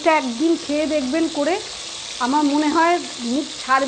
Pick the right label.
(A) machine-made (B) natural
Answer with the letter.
B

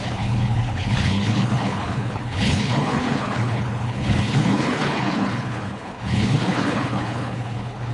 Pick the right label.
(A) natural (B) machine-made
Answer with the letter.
B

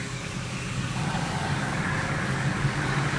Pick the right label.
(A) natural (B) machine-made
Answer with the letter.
B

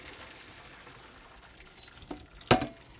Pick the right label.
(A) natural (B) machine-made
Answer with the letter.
A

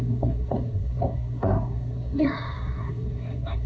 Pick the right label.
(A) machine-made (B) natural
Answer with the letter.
A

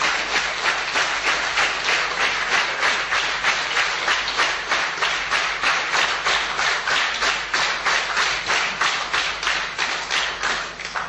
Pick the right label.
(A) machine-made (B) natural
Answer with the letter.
B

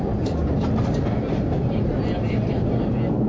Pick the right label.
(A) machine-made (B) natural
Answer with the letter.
B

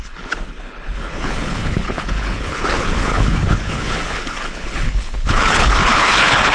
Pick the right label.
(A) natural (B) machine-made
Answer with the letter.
B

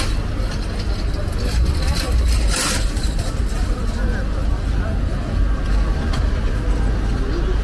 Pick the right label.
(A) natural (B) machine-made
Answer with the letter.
A